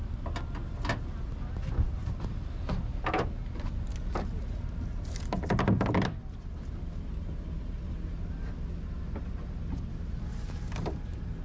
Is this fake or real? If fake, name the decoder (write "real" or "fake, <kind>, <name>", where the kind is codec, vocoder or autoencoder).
real